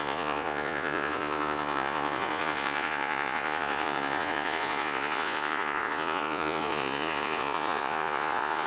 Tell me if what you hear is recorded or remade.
remade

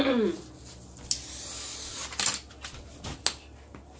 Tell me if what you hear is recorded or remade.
recorded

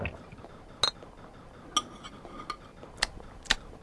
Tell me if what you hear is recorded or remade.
recorded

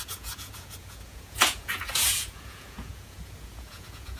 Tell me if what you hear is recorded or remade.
remade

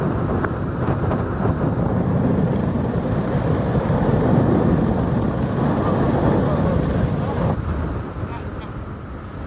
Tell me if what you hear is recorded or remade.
recorded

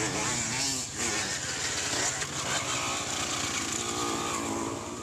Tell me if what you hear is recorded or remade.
recorded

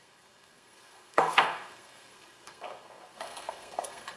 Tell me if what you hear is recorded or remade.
remade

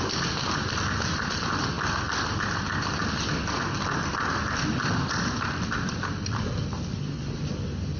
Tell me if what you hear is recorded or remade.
recorded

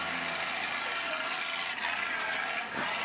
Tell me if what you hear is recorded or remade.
recorded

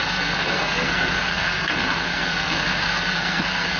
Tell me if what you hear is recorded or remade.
remade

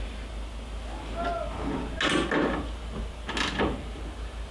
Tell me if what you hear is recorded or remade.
recorded